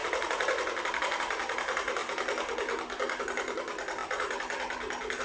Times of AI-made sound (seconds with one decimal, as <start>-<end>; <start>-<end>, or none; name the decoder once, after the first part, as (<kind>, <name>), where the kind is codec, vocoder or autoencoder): none